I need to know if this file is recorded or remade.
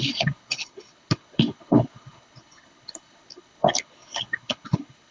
remade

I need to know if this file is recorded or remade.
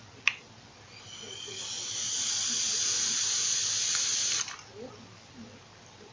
recorded